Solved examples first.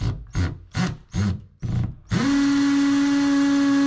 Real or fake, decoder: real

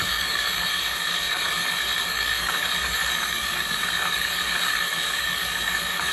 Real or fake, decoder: fake, codec, DAC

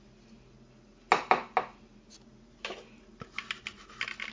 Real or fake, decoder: real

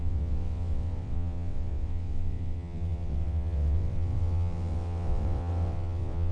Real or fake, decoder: fake, vocoder, WaveNeXt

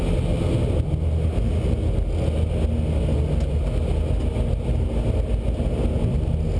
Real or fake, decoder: real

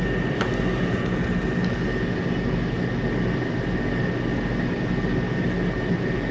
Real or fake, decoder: real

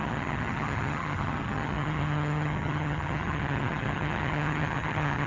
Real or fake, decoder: fake, vocoder, HiFi-GAN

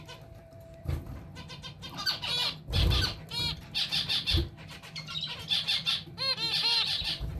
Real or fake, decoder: fake, vocoder, BigVGAN v2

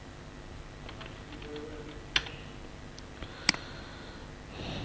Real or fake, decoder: real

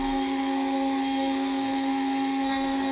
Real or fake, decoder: fake, codec, SNAC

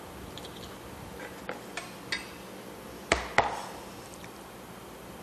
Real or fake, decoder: real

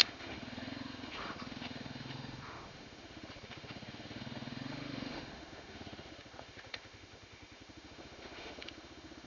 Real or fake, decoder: fake, autoencoder, DAC-VAE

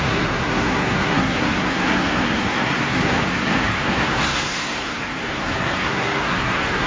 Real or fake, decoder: fake, codec, SNAC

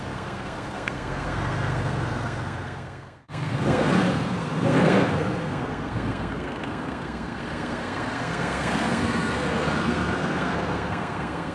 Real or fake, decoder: fake, codec, SNAC